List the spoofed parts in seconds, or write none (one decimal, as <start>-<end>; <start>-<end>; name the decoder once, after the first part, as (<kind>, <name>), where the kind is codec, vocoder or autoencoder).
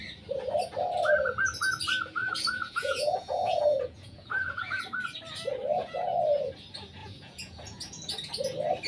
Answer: 2.2-4.8 (vocoder, Vocos); 5.8-6.5; 7.0-8.3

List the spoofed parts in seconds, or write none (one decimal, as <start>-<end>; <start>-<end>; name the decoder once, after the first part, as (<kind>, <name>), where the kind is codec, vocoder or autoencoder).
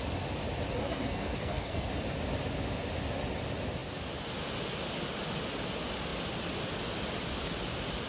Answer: 0.8-1.9 (codec, SNAC)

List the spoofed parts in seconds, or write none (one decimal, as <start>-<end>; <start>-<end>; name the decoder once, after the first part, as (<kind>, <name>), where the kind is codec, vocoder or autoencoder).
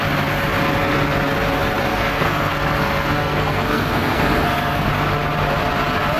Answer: 1.9-4.9 (codec, SNAC)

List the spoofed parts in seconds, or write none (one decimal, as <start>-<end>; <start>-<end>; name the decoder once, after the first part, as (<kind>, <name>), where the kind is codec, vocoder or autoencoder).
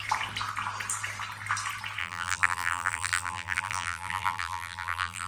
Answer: 2.0-5.3 (vocoder, BigVGAN v2)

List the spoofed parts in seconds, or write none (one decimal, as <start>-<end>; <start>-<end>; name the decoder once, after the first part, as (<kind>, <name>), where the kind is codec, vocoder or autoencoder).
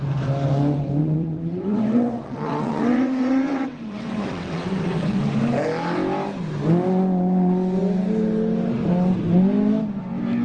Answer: 1.0-5.2 (vocoder, WaveNeXt)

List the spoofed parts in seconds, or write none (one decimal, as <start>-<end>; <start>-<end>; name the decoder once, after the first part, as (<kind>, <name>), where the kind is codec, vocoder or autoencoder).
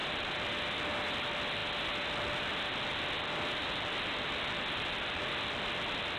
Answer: 0.0-0.5 (vocoder, BigVGAN v2)